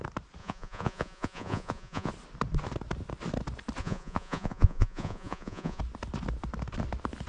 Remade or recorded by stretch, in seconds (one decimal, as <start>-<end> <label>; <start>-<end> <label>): 0.0-0.4 recorded; 0.4-2.1 remade; 2.1-3.8 recorded; 3.8-5.8 remade; 5.8-7.3 recorded